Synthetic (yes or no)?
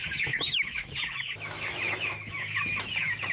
yes